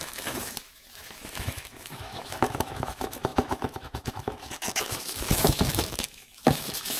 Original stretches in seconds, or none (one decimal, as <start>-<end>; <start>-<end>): none